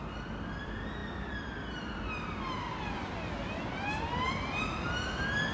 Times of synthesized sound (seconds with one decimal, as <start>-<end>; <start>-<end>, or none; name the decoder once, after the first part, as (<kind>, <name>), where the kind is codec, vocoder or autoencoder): none